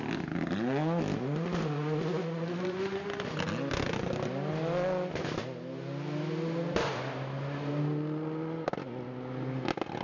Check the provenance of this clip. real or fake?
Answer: real